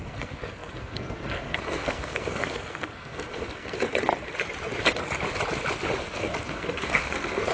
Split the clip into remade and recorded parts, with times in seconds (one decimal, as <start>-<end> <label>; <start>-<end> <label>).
0.0-4.1 remade; 4.1-6.0 recorded; 6.0-7.5 remade